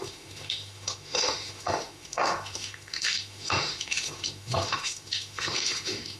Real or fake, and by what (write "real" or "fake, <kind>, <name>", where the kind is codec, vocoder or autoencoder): fake, autoencoder, DAC-VAE